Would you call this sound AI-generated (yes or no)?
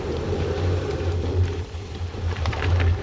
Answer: yes